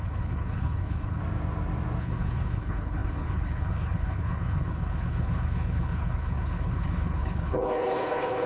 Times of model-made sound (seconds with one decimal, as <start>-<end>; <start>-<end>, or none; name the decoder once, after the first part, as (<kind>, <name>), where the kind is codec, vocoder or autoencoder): 0.0-1.2 (codec, HILCodec); 2.0-8.5